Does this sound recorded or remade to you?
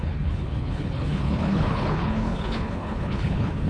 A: remade